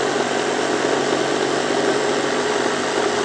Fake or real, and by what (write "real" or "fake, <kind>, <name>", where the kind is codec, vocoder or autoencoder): real